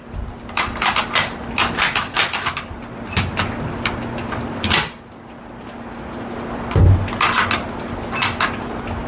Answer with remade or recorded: recorded